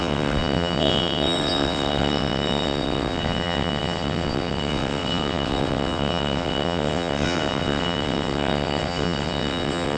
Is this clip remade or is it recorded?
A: remade